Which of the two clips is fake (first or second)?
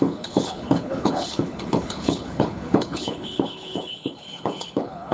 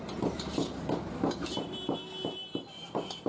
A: first